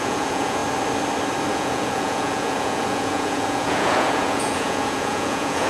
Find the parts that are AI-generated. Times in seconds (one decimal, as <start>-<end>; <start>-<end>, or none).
0.0-0.6; 1.5-5.7